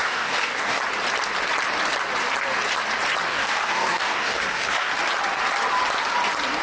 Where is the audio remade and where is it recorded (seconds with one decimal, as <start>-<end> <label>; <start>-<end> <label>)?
0.0-0.8 remade; 0.8-3.3 recorded; 3.3-4.9 remade; 4.9-6.6 recorded